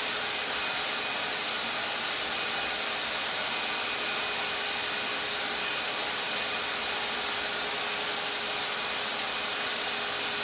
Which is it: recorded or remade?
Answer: recorded